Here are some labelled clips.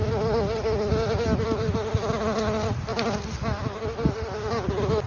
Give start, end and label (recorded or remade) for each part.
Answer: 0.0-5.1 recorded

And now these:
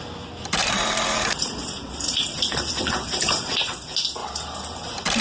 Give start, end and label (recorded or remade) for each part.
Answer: 0.0-0.6 recorded; 0.6-3.7 remade; 3.7-4.2 recorded; 4.2-5.2 remade